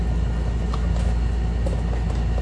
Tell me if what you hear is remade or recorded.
recorded